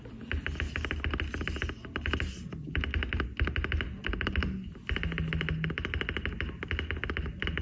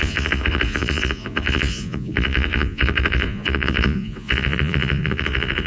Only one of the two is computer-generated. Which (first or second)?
second